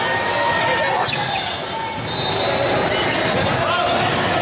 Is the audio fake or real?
real